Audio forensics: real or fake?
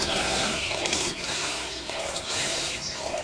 fake